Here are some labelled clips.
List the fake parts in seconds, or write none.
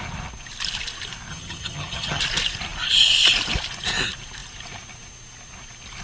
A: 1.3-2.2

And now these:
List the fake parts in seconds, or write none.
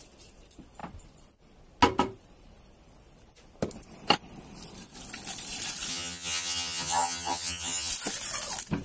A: 5.9-7.9